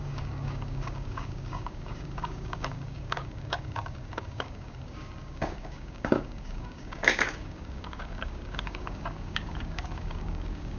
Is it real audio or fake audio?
fake